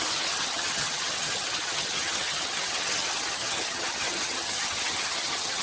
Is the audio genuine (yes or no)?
no